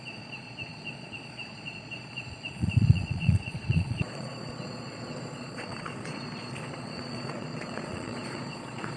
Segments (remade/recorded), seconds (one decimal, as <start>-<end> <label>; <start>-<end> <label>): 0.0-9.0 remade